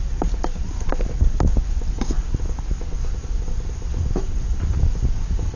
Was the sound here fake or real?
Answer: real